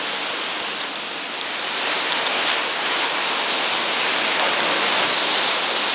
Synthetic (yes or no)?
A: no